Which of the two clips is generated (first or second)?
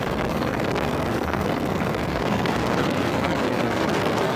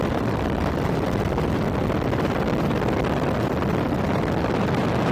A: first